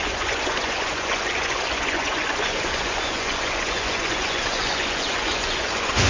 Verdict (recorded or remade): remade